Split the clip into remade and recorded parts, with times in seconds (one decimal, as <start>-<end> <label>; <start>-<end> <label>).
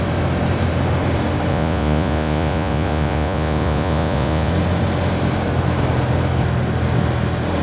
0.0-1.5 recorded; 1.5-4.5 remade; 4.5-7.6 recorded